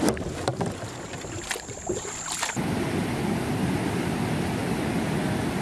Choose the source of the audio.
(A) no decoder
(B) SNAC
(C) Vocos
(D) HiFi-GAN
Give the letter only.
A